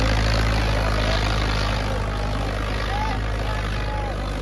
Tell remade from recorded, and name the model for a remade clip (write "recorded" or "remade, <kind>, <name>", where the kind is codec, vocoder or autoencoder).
recorded